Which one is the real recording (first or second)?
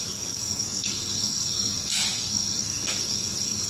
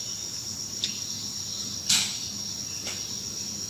second